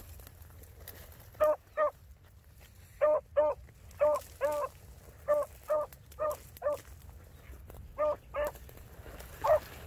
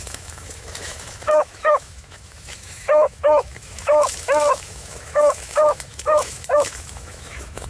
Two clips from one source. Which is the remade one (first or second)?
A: second